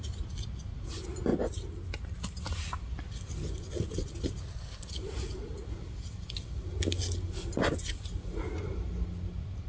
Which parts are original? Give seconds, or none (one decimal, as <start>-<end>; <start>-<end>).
0.0-4.4; 4.9-9.7